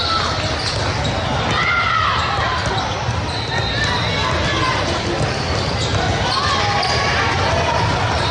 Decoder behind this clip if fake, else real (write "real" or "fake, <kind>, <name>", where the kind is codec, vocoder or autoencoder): real